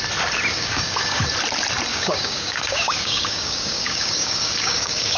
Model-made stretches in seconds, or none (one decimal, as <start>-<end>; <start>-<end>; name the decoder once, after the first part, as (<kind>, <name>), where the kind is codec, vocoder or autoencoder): 0.5-1.2 (codec, DAC); 1.9-5.2